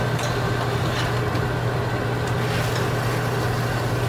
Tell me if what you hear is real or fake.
real